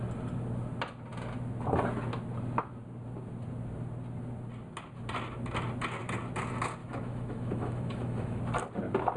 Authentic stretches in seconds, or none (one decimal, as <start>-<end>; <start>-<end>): 0.0-6.8; 8.4-9.2